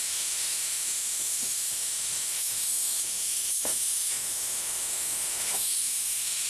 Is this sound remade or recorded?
remade